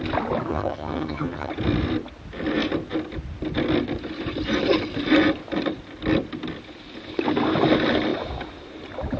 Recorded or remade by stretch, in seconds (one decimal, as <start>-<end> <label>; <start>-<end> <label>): 0.0-0.5 recorded; 0.5-1.5 remade; 1.5-9.2 recorded